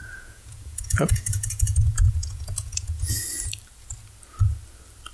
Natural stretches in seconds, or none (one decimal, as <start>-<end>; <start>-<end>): 3.1-5.1